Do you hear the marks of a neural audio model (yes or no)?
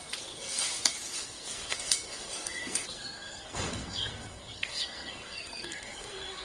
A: yes